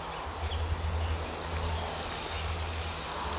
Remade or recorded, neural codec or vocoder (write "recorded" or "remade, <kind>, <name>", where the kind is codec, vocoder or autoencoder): recorded